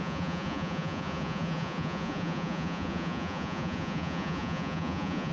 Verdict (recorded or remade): remade